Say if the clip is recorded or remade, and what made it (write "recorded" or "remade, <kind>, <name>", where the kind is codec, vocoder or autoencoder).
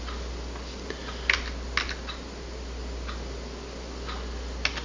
recorded